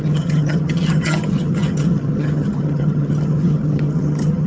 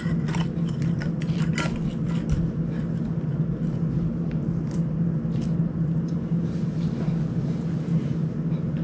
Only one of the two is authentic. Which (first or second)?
second